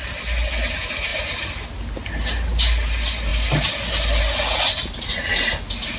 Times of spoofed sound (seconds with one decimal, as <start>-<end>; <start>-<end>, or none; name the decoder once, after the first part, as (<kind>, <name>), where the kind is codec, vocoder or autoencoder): none